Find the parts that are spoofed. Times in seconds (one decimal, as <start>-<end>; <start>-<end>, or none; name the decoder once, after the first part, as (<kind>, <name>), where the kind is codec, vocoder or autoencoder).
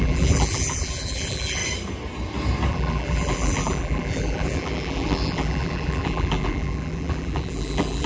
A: 0.0-1.6 (vocoder, BigVGAN v2); 2.7-8.1